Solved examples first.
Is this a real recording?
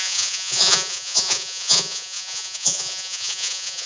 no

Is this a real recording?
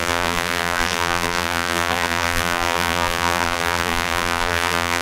no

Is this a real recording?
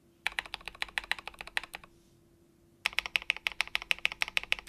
yes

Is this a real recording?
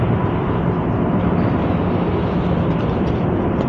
yes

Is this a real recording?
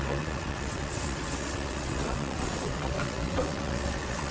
no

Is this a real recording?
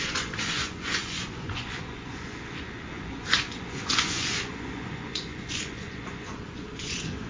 no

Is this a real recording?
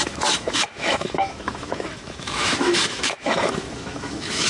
no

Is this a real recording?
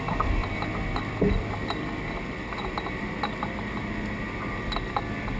yes